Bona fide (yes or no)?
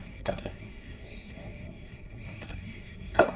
no